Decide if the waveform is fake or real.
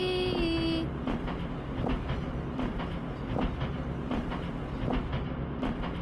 real